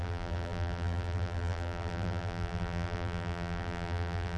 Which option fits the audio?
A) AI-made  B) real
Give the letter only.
A